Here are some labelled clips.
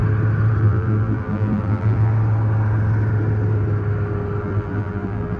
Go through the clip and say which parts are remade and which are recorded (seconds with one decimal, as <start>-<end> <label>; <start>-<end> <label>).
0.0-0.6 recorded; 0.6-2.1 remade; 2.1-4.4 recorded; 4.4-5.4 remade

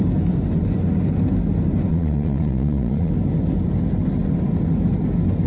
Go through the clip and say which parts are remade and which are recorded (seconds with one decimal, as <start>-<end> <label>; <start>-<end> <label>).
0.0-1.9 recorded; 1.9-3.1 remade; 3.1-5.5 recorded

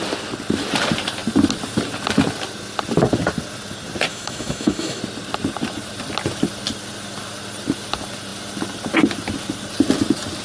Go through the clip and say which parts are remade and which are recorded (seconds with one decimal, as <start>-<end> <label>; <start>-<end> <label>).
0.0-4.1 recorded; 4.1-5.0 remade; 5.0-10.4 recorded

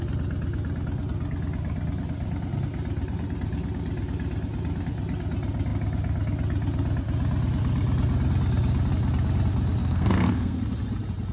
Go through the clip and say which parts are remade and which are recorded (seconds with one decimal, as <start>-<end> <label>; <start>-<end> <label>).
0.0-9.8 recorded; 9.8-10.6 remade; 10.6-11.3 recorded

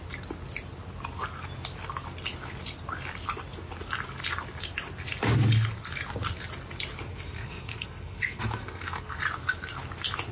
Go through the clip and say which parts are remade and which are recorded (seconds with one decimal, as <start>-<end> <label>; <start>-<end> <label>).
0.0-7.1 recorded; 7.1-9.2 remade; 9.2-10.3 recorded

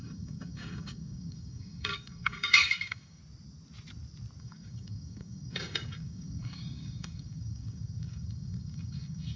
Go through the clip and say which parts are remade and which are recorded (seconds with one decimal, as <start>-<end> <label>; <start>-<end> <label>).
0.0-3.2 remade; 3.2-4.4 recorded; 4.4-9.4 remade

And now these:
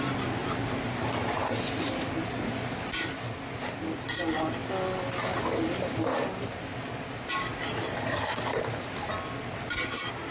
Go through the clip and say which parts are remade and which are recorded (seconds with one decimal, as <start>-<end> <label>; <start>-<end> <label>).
0.0-10.3 recorded

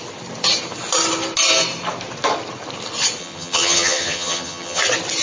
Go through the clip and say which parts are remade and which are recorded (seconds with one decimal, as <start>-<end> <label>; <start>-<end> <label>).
0.0-3.2 recorded; 3.2-4.8 remade; 4.8-5.2 recorded